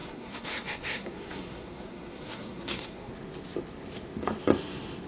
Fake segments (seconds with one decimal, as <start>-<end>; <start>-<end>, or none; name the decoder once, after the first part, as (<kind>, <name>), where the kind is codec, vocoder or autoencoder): 0.0-3.1 (codec, SNAC)